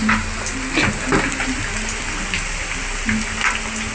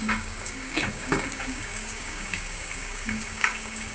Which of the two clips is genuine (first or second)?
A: first